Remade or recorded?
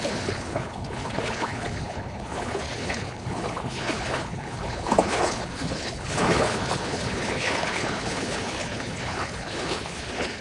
remade